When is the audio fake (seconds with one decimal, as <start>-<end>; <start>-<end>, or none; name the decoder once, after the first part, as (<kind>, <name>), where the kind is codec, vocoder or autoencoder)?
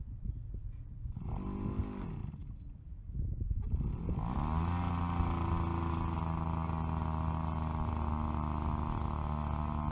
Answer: none